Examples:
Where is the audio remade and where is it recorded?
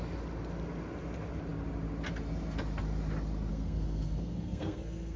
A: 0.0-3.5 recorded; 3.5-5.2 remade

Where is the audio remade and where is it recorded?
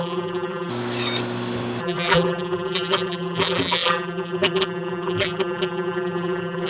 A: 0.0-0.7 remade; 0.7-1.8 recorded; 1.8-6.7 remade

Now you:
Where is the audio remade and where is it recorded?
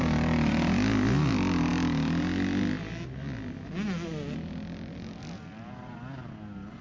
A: 0.0-6.8 recorded